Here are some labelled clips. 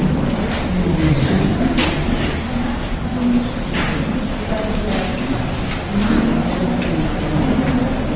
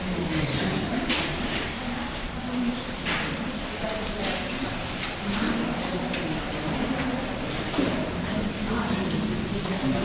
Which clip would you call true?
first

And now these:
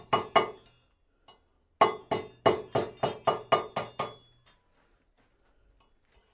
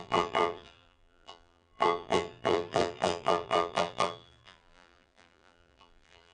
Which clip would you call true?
first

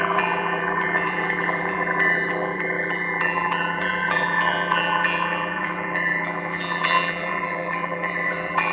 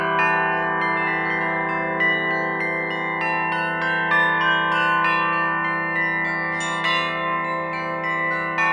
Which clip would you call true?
second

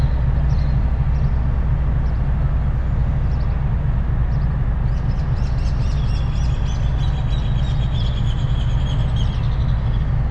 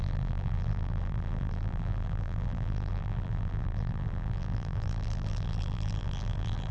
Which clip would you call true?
first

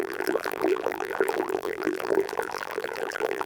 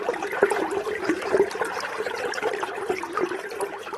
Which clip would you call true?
second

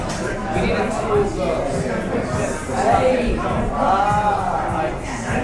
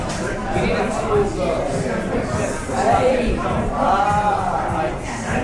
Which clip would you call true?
first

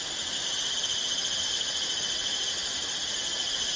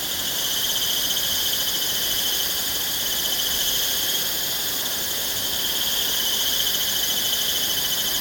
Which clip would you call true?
first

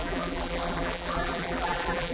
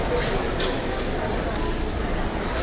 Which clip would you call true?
second